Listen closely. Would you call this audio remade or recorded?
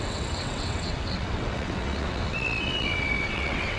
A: remade